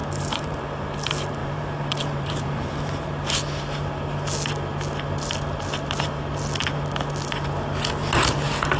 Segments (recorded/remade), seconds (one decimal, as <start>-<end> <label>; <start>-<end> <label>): 0.0-0.6 remade; 0.6-1.4 recorded; 1.4-3.1 remade; 3.1-8.8 recorded